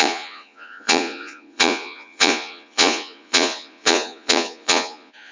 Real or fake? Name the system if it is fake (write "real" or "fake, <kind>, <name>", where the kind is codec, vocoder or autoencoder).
fake, vocoder, Vocos